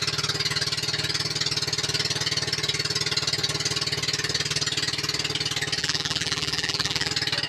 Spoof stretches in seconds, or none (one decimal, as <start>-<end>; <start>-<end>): 5.8-7.1